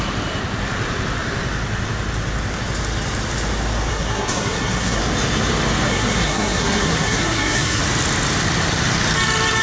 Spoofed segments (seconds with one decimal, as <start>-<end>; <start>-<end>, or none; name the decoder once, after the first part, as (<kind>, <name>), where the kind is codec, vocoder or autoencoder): 3.9-5.0 (codec, SNAC); 5.9-7.8